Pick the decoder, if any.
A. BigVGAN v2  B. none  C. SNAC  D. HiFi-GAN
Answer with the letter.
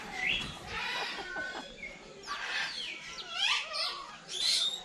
A